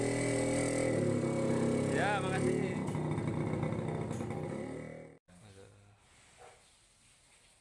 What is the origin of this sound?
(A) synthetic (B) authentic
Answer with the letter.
B